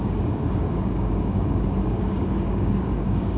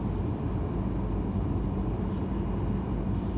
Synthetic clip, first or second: first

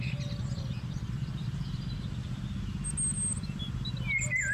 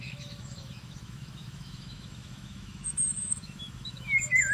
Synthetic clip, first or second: second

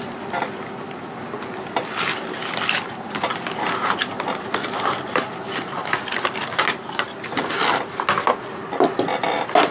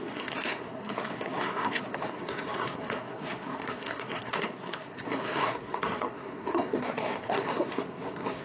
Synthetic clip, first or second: second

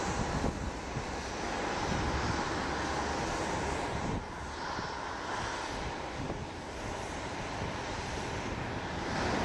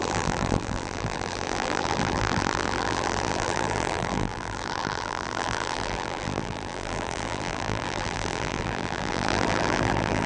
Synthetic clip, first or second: second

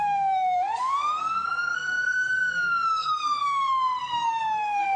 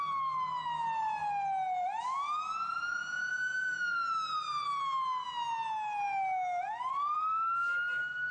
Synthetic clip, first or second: first